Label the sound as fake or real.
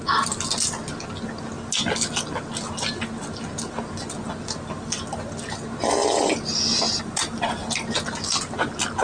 real